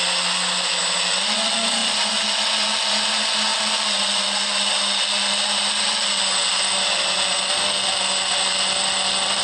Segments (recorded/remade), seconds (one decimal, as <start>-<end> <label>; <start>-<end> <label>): 0.0-9.4 recorded